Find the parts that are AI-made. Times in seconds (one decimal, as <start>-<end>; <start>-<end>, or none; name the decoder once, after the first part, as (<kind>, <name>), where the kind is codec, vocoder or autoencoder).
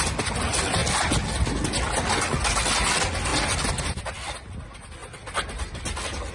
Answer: none